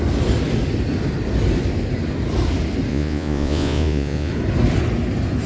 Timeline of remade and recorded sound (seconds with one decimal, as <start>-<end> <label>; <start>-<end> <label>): 0.0-2.9 recorded; 2.9-4.3 remade; 4.3-5.5 recorded